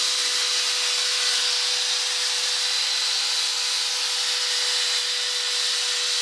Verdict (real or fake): real